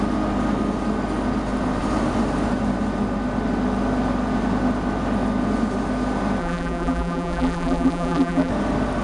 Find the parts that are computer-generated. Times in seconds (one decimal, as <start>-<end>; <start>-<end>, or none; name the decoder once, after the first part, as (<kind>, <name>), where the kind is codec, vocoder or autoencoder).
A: 6.4-8.5 (vocoder, BigVGAN v2)